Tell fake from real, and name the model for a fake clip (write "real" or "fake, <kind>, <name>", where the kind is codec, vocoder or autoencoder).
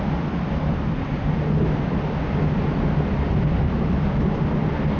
real